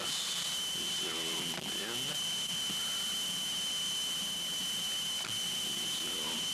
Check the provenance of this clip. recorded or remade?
recorded